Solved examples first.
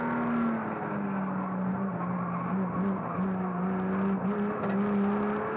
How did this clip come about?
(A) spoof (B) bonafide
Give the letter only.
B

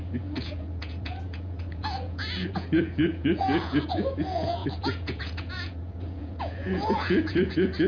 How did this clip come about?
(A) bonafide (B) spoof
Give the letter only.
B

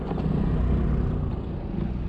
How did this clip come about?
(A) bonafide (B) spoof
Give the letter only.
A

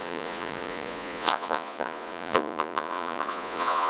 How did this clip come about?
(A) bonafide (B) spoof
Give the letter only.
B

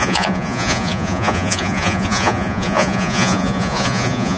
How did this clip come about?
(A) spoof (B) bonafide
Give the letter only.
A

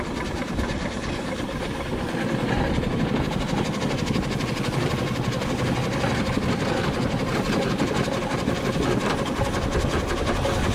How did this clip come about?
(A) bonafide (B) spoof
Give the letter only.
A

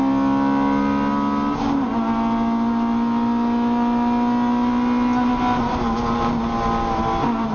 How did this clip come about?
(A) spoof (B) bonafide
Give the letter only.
B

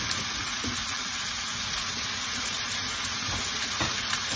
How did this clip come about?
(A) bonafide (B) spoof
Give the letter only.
B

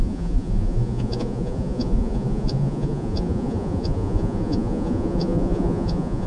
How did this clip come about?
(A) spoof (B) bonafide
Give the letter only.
A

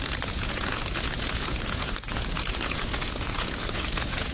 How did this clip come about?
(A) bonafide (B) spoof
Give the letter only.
B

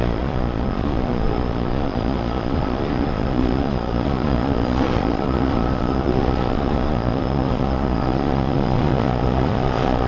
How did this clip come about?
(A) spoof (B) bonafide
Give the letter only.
A